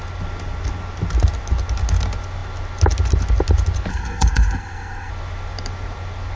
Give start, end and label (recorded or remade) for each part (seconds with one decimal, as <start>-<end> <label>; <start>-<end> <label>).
0.0-3.9 recorded; 3.9-5.1 remade; 5.1-6.4 recorded